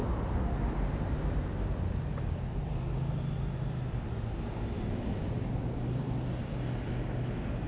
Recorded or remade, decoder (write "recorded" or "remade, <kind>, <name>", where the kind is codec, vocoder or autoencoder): recorded